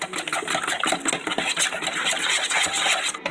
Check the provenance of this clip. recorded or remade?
recorded